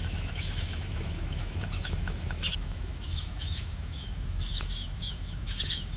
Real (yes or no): no